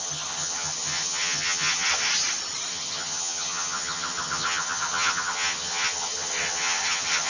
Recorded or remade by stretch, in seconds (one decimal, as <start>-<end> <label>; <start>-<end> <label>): 0.0-2.1 remade; 2.1-2.7 recorded; 2.7-7.3 remade